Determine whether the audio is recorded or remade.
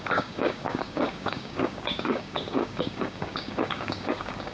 remade